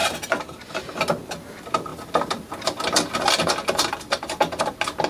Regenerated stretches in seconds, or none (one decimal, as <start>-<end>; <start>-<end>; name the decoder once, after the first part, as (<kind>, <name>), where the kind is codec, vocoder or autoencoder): none